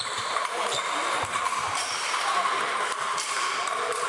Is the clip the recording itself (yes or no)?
no